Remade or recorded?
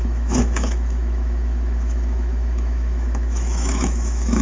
remade